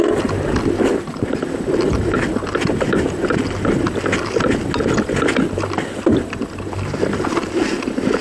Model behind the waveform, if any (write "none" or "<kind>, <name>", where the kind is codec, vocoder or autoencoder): none